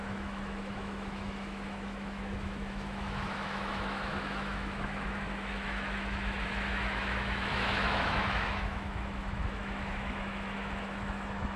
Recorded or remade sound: remade